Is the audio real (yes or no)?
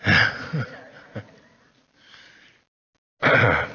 yes